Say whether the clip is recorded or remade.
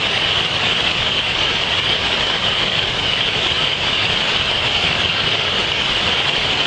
remade